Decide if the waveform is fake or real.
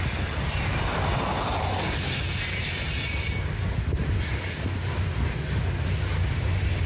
real